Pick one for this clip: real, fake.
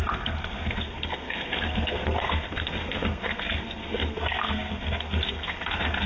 fake